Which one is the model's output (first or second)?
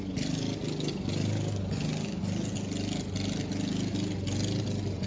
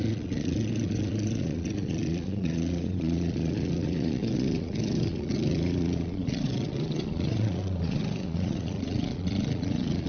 second